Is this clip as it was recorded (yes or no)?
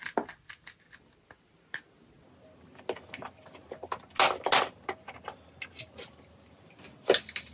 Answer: yes